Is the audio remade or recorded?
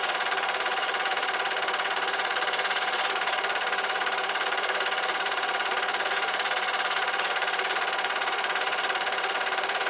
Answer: remade